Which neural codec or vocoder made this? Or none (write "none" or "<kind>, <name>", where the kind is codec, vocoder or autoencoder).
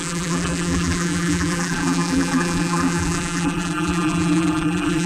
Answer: vocoder, BigVGAN v2